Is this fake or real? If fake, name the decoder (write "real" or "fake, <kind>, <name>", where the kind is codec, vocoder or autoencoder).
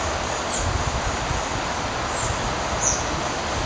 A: real